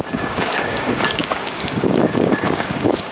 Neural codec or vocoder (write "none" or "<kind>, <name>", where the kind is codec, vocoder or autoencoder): codec, DAC